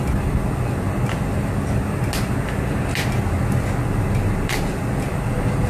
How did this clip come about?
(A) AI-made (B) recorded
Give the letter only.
B